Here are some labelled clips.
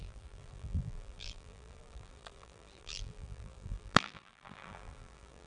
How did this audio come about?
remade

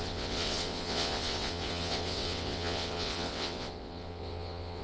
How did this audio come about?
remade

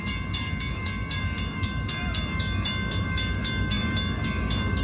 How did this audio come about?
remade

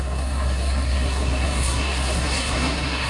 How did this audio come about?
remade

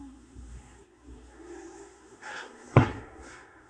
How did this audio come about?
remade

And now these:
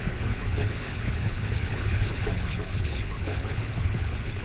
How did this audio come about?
remade